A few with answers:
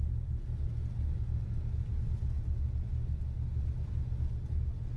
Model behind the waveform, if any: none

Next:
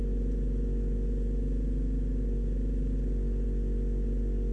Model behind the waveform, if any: none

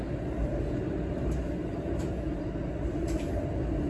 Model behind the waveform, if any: none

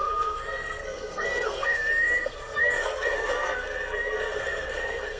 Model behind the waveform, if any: codec, SNAC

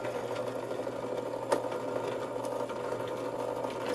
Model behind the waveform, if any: none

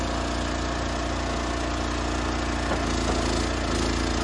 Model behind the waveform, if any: none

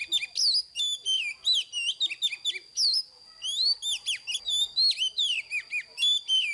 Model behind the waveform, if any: none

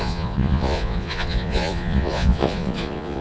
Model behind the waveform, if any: vocoder, Vocos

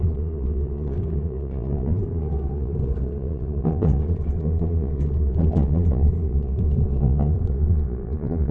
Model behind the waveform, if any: vocoder, Vocos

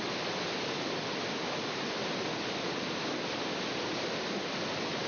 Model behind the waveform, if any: none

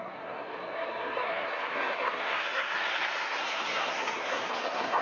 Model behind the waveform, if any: codec, SNAC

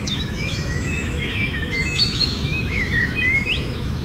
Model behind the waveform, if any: autoencoder, DAC-VAE